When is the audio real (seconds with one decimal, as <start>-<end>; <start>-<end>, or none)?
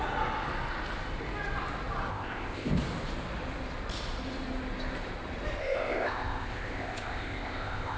0.0-2.1; 2.8-5.6